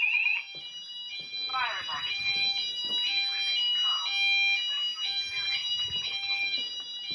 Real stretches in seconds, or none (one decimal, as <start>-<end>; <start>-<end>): 0.0-1.5; 2.1-7.1